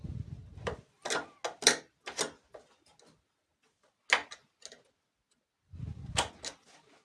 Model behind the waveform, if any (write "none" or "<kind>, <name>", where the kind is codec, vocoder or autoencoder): none